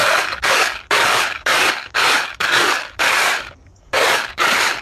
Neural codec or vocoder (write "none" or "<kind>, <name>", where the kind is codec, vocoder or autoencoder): codec, DAC